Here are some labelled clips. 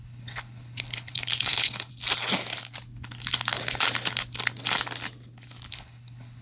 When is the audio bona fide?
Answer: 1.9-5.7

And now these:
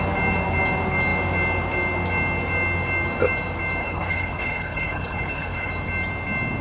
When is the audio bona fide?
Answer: 0.0-3.8; 5.7-6.6

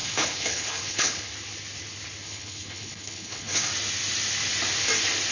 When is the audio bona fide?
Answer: 1.3-2.2; 3.7-5.3

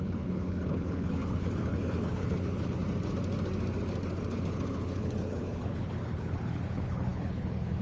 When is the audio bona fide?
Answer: 2.8-4.3

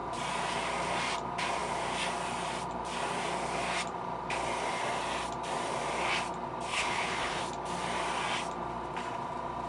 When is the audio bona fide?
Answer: 0.0-6.7; 7.4-9.7

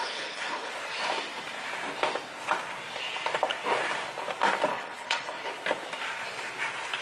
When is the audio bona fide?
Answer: 0.7-4.7; 5.5-7.0

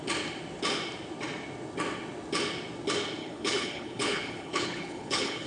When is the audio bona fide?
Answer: 0.0-3.2